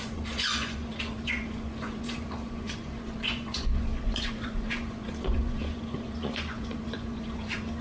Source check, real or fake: fake